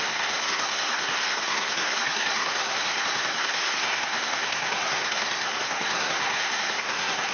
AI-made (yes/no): yes